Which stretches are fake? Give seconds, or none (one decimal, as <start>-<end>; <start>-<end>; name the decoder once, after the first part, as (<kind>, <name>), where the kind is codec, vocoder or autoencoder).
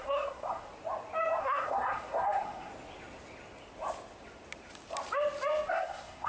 0.0-0.7 (codec, SNAC); 1.4-2.7; 5.7-6.3